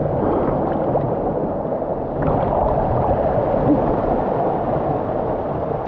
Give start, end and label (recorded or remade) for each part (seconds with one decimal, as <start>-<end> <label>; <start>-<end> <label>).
0.0-5.9 recorded